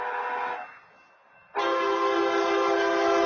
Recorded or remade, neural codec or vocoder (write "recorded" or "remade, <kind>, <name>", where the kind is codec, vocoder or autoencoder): recorded